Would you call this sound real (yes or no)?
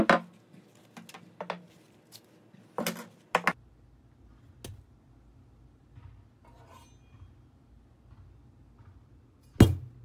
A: yes